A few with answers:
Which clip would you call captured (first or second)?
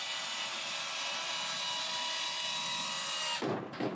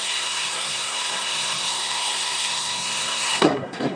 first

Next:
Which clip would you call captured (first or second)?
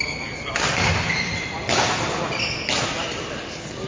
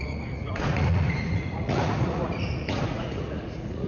first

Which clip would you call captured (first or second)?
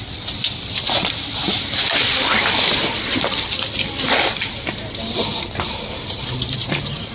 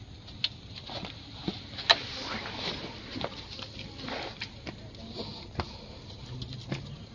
second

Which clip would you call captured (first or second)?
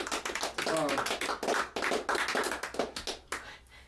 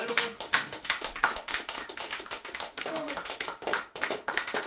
first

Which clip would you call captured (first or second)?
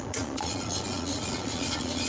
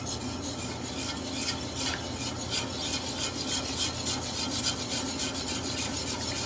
second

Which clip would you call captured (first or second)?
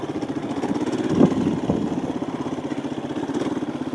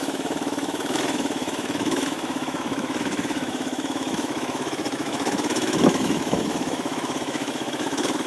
first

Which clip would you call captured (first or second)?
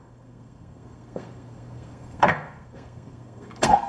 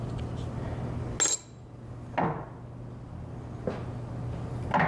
second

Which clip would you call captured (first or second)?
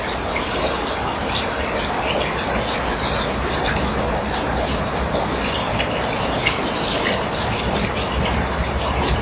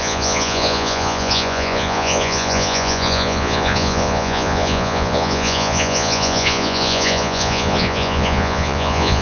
first